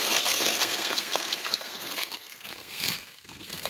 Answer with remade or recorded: remade